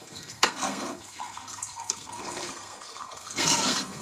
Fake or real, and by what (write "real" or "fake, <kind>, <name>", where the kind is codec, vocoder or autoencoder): fake, codec, SNAC